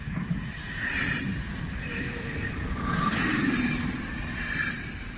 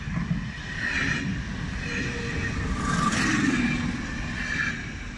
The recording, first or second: second